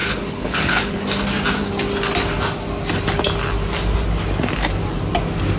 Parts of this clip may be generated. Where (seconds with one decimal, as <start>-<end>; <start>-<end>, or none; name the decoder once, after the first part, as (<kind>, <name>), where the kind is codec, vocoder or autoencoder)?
0.0-1.0 (codec, HILCodec)